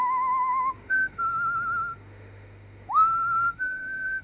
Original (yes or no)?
no